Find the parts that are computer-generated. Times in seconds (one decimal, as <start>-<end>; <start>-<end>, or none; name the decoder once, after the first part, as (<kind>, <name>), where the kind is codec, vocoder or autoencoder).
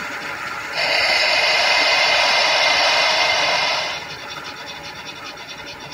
2.4-3.7 (vocoder, BigVGAN v2)